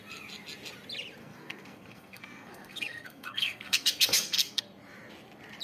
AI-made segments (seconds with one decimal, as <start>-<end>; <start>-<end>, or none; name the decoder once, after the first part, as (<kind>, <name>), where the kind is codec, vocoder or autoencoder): 1.2-4.6 (codec, SNAC)